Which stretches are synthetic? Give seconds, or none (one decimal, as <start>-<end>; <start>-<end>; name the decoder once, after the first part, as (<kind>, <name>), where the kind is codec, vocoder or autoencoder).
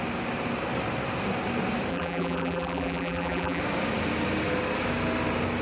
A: 1.9-3.6 (vocoder, BigVGAN v2)